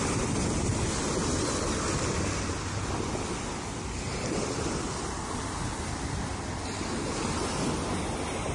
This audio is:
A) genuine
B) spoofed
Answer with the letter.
A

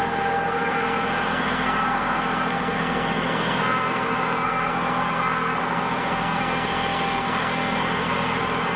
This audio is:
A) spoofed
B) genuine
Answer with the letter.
A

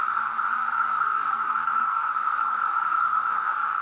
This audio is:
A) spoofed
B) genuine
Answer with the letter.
A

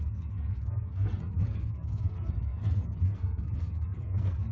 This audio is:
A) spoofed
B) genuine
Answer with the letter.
A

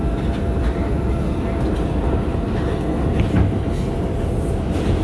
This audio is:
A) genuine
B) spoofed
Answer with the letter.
A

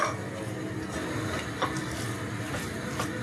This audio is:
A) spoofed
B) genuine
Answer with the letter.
B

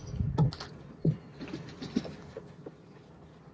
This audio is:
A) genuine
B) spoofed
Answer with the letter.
A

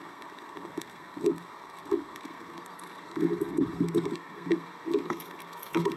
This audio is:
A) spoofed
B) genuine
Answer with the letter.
A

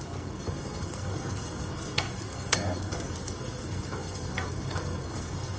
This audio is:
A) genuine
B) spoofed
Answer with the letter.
B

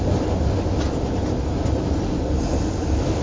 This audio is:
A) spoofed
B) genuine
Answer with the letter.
B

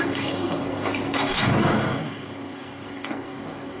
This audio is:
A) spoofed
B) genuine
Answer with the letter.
A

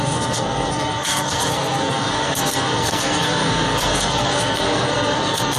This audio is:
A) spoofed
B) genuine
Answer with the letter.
A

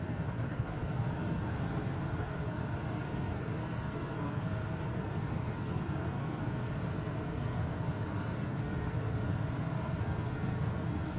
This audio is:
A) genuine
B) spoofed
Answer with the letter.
B